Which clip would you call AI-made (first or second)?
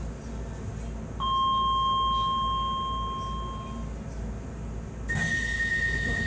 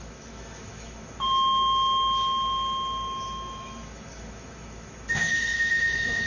second